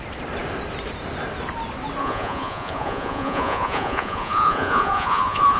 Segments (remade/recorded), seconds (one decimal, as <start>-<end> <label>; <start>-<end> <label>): 0.0-2.0 recorded; 2.0-5.6 remade

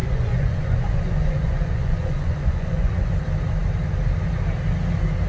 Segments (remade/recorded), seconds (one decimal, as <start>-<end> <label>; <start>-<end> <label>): 0.0-3.1 remade; 3.1-5.3 recorded

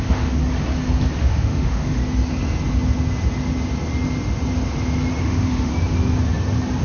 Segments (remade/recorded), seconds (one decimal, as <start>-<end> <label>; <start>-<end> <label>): 0.0-0.4 remade; 0.4-1.2 recorded; 1.2-2.0 remade; 2.0-5.2 recorded; 5.2-5.7 remade; 5.7-6.8 recorded